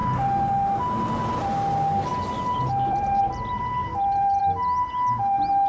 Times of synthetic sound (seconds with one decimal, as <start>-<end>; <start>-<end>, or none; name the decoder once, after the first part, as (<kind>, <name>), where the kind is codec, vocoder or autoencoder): 2.1-3.2 (vocoder, BigVGAN v2); 3.8-4.4

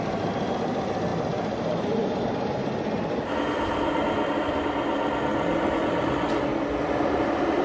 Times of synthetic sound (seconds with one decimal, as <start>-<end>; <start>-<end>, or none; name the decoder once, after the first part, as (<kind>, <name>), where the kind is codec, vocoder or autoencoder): 0.0-7.6 (vocoder, BigVGAN v2)